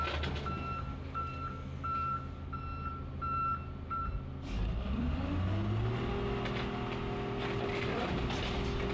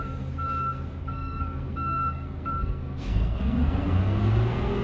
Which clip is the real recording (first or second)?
first